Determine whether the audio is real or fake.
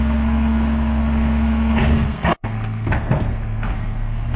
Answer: fake